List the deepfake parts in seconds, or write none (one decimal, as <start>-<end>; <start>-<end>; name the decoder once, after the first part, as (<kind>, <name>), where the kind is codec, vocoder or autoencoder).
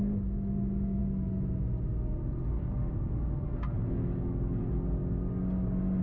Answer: none